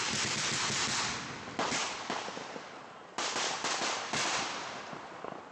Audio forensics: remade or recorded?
remade